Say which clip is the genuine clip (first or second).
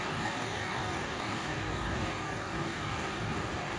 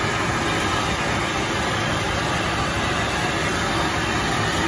second